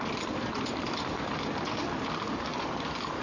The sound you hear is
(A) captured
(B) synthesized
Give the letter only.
A